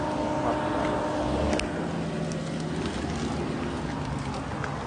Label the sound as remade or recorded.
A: recorded